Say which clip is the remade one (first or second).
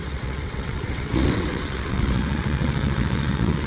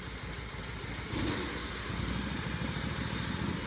first